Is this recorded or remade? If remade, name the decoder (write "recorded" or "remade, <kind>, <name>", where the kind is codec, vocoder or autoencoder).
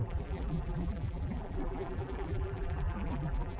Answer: remade, vocoder, BigVGAN v2